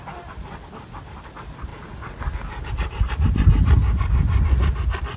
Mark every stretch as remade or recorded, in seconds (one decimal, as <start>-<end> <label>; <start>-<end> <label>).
0.0-5.2 recorded